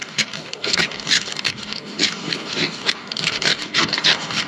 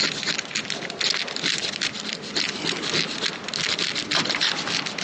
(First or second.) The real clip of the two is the second